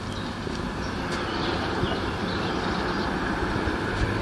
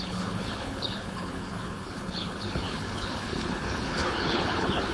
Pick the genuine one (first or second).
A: first